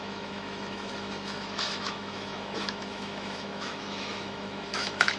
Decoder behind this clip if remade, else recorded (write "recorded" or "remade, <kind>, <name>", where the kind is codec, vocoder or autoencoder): remade, autoencoder, DAC-VAE